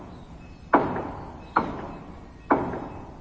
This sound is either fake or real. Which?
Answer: real